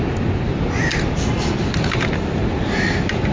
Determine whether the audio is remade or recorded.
recorded